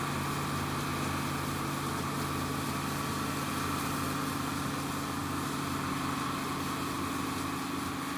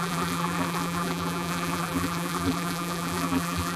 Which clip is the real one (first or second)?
first